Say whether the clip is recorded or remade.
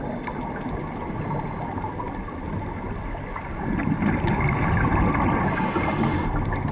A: recorded